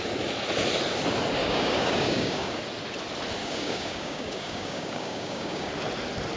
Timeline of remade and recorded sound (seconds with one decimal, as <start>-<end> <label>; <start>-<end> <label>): 0.0-1.4 recorded; 1.4-2.6 remade; 2.6-3.4 recorded; 3.4-5.7 remade; 5.7-6.4 recorded